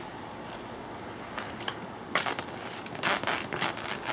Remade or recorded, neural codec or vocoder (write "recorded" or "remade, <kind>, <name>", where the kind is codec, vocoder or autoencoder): recorded